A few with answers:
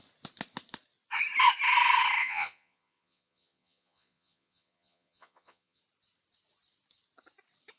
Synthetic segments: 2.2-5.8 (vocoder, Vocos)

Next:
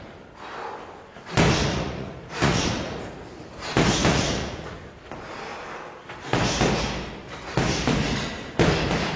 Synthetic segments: 1.7-3.0 (vocoder, Vocos); 4.1-4.8